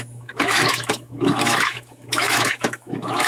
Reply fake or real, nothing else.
fake